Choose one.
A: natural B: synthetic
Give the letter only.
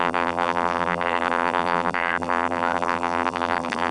B